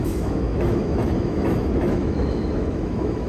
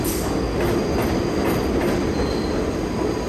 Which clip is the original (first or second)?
second